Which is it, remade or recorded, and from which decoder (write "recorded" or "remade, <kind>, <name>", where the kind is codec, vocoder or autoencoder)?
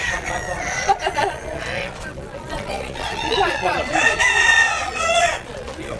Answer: remade, vocoder, Vocos